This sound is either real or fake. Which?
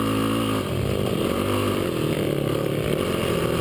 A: fake